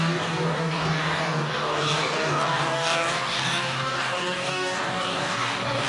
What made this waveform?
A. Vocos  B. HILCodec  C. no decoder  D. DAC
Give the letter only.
D